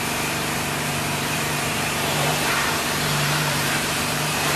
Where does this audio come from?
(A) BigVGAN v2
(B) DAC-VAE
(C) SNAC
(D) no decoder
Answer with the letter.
A